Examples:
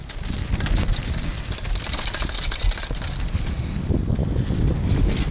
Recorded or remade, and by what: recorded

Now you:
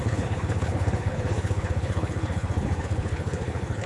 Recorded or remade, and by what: remade, codec, HILCodec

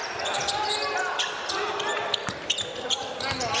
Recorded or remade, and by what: recorded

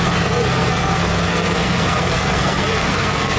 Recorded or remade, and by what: remade, codec, SNAC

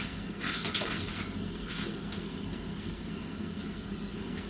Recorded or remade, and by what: remade, codec, SNAC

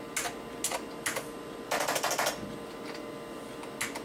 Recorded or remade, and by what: recorded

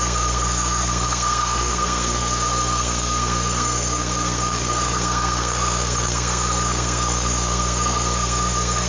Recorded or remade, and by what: remade, codec, SNAC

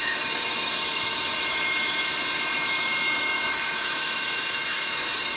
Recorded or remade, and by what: remade, autoencoder, DAC-VAE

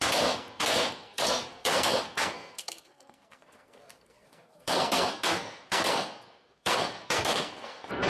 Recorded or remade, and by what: remade, codec, SNAC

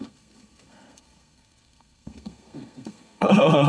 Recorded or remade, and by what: remade, codec, SNAC